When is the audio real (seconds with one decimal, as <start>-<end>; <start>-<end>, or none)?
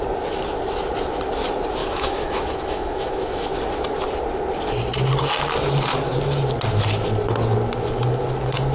0.0-1.8; 3.5-8.7